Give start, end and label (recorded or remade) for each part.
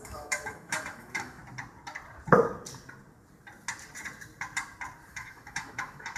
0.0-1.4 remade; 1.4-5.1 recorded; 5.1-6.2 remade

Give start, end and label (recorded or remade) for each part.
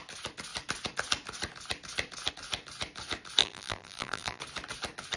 0.0-3.4 recorded; 3.4-4.4 remade; 4.4-5.2 recorded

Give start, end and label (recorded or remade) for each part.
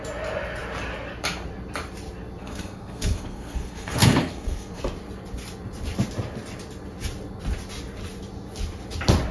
0.0-2.4 recorded; 2.4-4.8 remade; 4.8-9.3 recorded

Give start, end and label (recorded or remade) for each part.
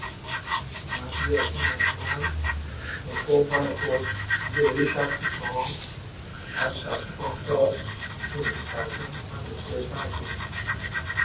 0.0-6.3 recorded; 6.3-8.1 remade; 8.1-11.2 recorded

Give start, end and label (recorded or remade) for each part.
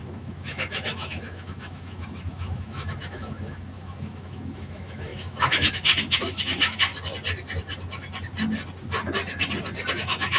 0.0-6.9 remade; 6.9-9.9 recorded; 9.9-10.4 remade